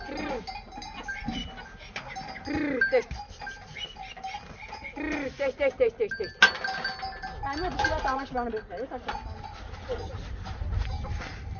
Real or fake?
real